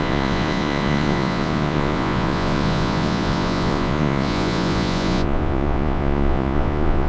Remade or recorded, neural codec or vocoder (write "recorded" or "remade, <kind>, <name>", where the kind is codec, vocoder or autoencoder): remade, vocoder, Vocos